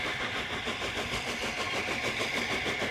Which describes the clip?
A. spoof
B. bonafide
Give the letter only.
B